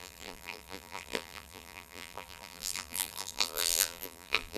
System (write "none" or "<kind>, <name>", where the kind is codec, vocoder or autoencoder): vocoder, BigVGAN v2